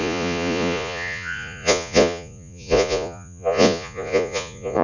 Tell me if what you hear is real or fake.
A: fake